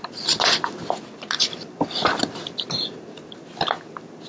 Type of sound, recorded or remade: recorded